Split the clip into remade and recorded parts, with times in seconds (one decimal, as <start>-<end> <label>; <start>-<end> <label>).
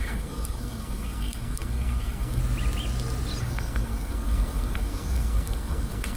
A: 0.0-2.4 remade; 2.4-3.4 recorded; 3.4-6.2 remade